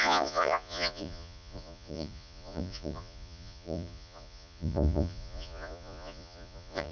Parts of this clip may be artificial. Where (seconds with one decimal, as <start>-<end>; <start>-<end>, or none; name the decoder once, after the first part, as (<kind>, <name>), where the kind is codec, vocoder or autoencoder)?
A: 0.0-6.9 (vocoder, Vocos)